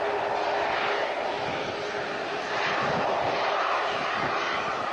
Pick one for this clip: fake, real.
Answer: real